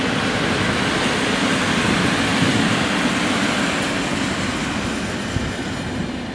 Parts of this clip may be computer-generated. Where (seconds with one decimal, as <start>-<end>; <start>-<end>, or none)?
none

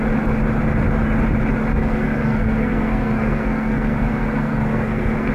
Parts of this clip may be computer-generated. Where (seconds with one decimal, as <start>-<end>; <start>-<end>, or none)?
1.7-5.3

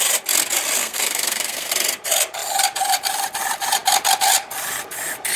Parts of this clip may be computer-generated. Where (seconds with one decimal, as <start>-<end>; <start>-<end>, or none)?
0.8-1.7

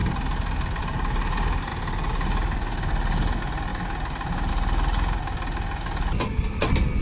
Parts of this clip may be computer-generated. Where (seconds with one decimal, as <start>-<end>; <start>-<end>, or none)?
none

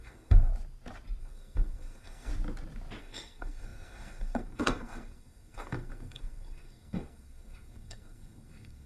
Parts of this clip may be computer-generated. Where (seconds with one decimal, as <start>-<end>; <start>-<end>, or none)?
0.0-0.5; 1.2-2.3; 3.0-8.9

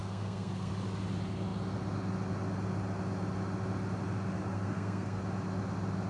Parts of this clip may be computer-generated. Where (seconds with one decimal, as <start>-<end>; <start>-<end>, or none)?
0.0-0.7; 4.5-5.2

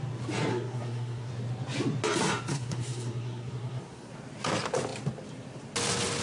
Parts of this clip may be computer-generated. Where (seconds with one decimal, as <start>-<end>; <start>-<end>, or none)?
0.5-1.3; 2.5-4.1